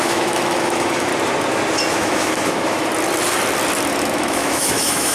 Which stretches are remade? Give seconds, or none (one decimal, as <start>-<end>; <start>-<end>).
0.0-1.1; 1.9-2.9; 4.0-5.1